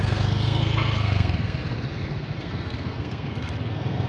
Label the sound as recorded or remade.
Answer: remade